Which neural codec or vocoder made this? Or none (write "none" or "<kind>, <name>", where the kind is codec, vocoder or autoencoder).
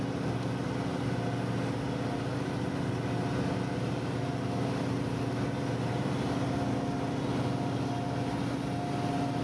none